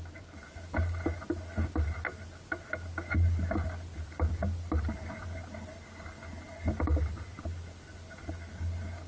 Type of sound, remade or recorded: recorded